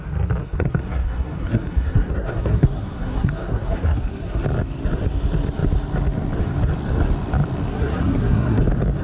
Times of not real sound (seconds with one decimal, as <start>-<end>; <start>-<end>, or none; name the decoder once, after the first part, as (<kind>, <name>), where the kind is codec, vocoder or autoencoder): 0.4-4.4 (codec, SNAC); 7.7-8.6